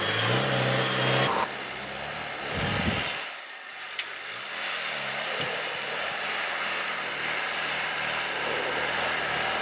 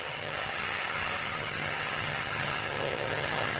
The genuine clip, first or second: first